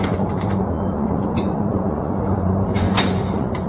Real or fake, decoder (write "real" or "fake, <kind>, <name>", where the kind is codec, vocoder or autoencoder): fake, vocoder, Vocos